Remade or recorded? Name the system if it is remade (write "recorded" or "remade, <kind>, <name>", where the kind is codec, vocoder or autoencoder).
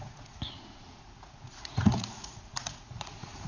remade, vocoder, Vocos